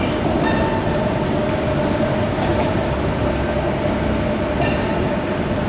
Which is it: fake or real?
real